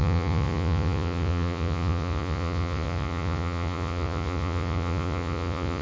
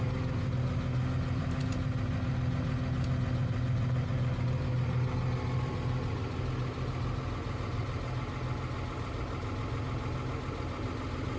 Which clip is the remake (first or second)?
first